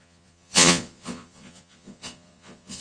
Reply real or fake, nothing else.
fake